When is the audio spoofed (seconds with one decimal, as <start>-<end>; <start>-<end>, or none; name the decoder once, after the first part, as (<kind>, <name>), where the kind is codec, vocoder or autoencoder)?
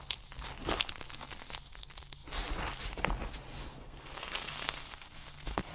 3.7-5.7 (codec, SNAC)